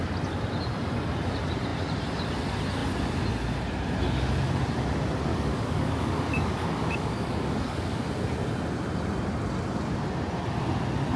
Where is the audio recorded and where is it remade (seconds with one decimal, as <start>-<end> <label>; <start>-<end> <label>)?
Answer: 0.0-5.3 recorded; 5.3-8.0 remade; 8.0-11.2 recorded